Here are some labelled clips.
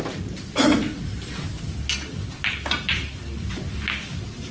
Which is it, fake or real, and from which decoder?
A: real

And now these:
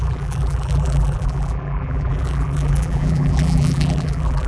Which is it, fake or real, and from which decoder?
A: fake, vocoder, BigVGAN v2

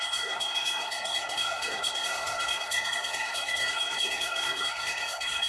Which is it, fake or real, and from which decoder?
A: fake, codec, SNAC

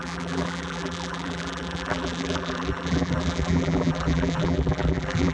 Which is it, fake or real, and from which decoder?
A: fake, vocoder, BigVGAN v2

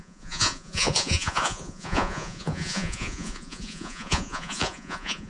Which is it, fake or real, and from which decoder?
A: fake, vocoder, Vocos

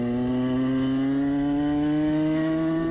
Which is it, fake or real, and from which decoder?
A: real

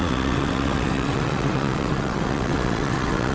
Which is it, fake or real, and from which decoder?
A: fake, vocoder, WaveNeXt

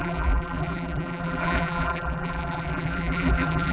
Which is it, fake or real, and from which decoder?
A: fake, vocoder, BigVGAN v2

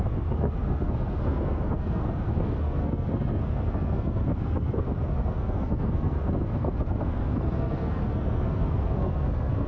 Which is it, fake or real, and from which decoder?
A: fake, codec, SNAC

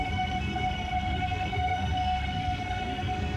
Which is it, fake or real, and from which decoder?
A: fake, codec, SNAC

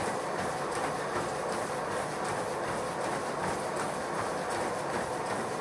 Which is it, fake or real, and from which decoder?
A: fake, vocoder, BigVGAN v2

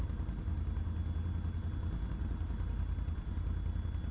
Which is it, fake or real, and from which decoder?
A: real